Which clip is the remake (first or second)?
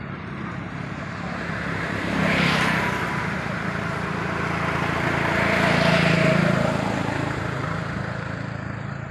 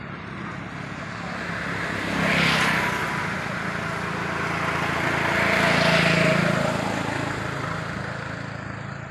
first